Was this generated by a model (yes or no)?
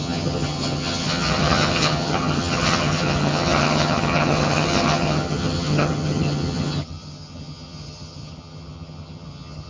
yes